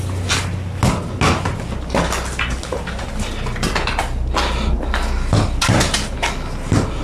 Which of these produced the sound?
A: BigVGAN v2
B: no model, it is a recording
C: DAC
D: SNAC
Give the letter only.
B